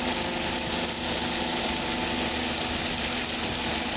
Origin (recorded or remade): recorded